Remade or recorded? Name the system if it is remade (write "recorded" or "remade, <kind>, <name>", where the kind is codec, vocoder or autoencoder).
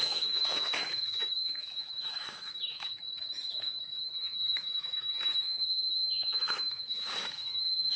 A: remade, autoencoder, DAC-VAE